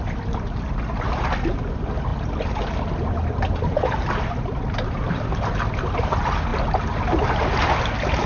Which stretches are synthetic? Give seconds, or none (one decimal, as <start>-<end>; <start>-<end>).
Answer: none